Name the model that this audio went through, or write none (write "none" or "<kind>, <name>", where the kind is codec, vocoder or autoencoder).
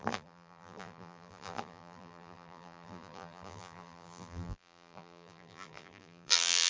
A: vocoder, BigVGAN v2